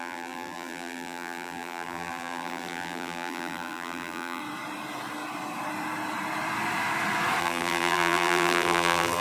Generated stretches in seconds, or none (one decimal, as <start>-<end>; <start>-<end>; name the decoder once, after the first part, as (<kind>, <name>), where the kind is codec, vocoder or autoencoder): 0.0-4.4 (vocoder, BigVGAN v2); 7.4-9.2